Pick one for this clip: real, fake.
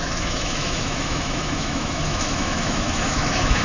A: fake